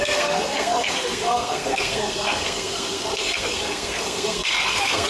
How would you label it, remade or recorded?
remade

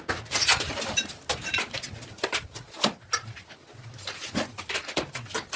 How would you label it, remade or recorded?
recorded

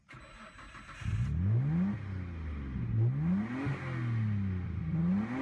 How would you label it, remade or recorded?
recorded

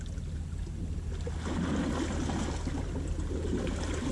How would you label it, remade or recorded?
recorded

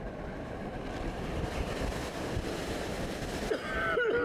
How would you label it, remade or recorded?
recorded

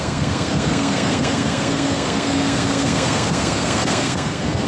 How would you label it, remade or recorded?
remade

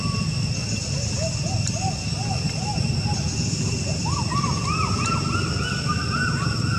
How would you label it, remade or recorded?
recorded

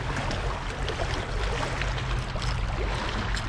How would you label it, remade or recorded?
recorded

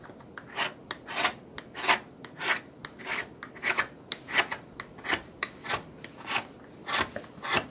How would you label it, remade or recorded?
recorded